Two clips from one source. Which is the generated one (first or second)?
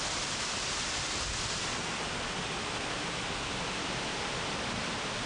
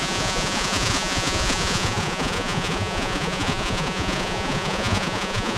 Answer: second